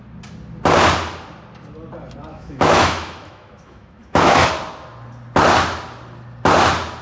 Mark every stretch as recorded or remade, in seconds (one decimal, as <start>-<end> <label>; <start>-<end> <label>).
0.0-2.3 recorded; 2.3-4.5 remade; 4.5-7.0 recorded